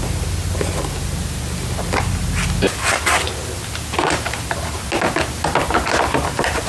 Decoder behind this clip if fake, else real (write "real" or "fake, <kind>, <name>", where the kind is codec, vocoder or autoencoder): real